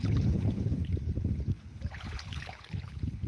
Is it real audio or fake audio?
fake